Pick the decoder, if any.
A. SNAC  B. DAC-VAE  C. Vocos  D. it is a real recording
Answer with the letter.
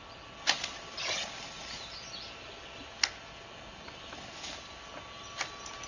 D